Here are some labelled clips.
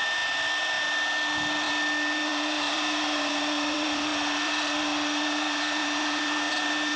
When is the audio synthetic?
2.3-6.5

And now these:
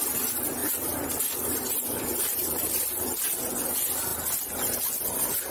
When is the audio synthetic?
0.6-3.2

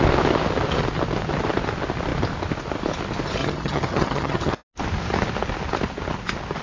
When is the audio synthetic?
3.4-4.5

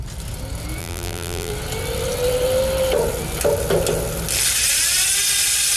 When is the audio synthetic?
0.8-1.5

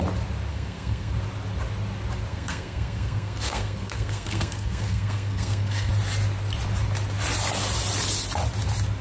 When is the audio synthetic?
0.5-1.1; 2.3-5.9